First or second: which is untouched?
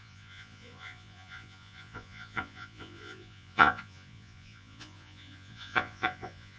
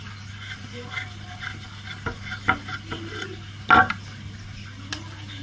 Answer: second